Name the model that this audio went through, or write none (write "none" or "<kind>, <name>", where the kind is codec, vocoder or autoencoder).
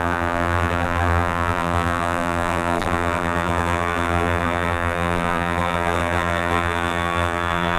vocoder, BigVGAN v2